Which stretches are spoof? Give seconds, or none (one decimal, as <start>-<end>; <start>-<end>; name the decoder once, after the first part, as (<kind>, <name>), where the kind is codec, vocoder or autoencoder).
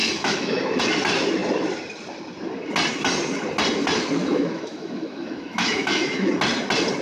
0.0-0.8 (autoencoder, DAC-VAE); 4.2-6.3